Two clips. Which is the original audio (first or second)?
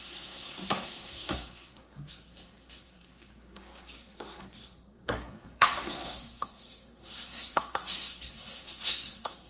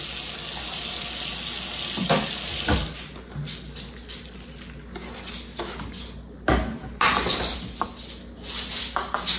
second